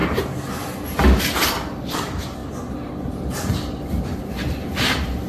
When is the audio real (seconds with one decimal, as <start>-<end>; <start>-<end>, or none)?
0.0-1.2; 2.4-4.2